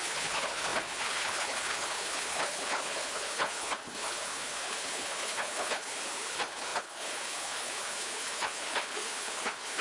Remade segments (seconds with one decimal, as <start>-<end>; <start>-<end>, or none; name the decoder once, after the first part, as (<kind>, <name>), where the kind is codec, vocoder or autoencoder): 0.0-9.8 (codec, HILCodec)